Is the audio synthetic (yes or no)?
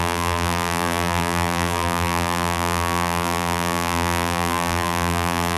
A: yes